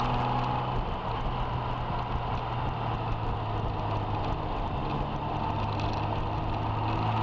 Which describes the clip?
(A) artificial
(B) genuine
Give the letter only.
B